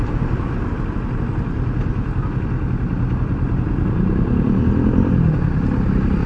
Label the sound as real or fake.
real